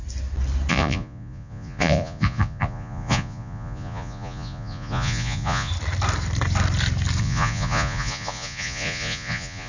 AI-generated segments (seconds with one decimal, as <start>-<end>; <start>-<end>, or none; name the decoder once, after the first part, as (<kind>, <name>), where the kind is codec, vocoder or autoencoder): 0.7-5.7 (vocoder, Vocos); 7.2-9.7